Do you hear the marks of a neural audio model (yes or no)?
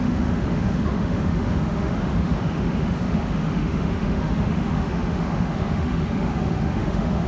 yes